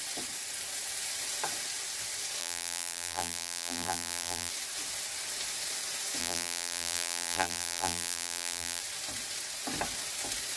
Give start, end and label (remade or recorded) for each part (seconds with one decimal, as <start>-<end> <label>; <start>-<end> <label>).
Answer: 0.0-2.4 recorded; 2.4-4.5 remade; 4.5-6.2 recorded; 6.2-8.8 remade; 8.8-10.6 recorded